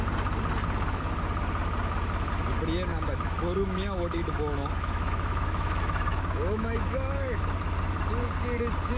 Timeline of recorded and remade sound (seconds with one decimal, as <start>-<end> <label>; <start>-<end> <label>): 0.0-2.9 recorded; 2.9-7.4 remade; 7.4-9.0 recorded